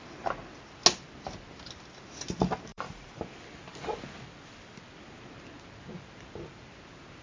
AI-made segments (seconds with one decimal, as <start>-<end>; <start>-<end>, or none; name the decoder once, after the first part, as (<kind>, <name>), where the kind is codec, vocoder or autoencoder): 2.7-3.2 (vocoder, BigVGAN v2)

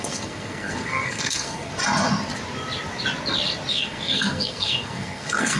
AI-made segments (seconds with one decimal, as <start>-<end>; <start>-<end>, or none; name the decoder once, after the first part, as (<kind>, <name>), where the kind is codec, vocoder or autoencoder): 0.0-1.7 (codec, SNAC); 3.7-5.6

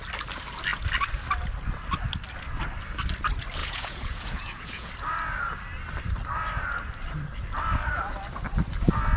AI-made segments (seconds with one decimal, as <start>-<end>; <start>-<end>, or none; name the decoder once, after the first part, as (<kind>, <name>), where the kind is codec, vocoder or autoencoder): 3.6-4.9 (vocoder, Vocos)

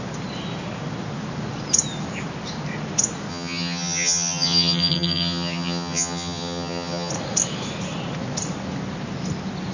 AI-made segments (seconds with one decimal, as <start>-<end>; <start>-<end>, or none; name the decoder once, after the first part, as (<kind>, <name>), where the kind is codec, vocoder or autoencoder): 3.3-7.1 (vocoder, HiFi-GAN)